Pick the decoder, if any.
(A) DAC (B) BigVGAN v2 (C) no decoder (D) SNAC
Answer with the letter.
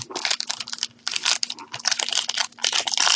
C